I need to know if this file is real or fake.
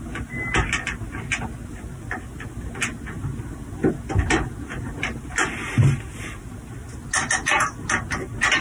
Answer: real